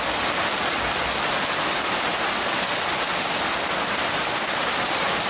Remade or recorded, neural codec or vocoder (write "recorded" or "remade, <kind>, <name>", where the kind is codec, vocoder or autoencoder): recorded